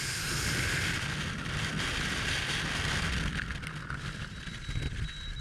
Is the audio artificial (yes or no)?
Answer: no